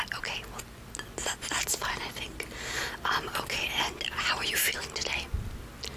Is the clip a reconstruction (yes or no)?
no